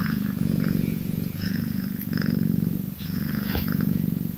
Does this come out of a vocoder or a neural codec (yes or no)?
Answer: yes